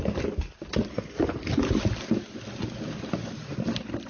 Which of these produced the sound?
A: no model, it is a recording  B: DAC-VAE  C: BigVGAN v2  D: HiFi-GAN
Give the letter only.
A